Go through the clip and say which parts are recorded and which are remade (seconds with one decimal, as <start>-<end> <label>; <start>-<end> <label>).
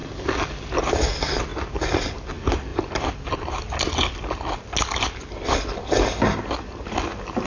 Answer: 0.0-7.5 recorded